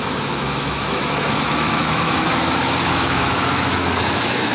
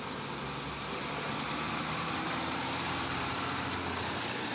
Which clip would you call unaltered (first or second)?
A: second